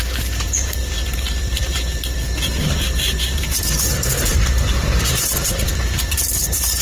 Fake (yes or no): yes